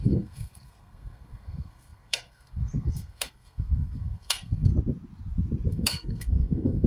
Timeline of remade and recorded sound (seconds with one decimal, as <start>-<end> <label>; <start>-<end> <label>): 0.0-4.7 remade; 4.7-5.7 recorded; 5.7-6.9 remade